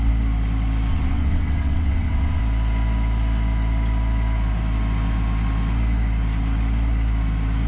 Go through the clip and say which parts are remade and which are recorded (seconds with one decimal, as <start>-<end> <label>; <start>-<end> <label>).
0.0-0.9 recorded; 0.9-2.4 remade; 2.4-7.7 recorded